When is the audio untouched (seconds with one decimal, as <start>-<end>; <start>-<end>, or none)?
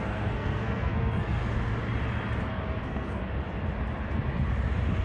1.4-2.8; 3.2-5.0